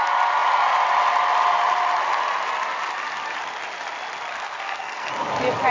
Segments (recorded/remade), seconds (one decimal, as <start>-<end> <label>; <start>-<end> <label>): 0.0-4.3 recorded; 4.3-5.1 remade; 5.1-5.7 recorded